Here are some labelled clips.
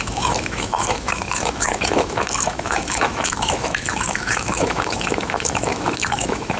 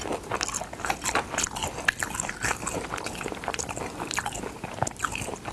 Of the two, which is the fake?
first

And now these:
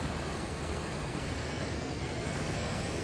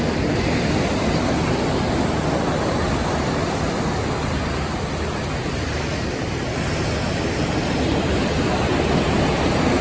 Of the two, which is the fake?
first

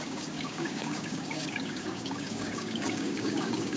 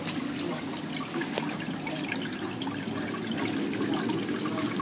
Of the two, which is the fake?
first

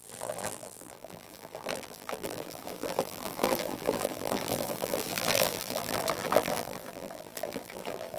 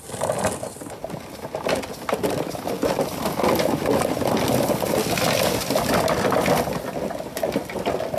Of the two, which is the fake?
first